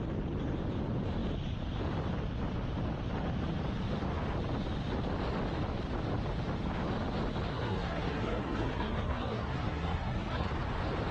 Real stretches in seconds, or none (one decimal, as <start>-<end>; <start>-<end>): 0.0-7.5; 10.5-11.1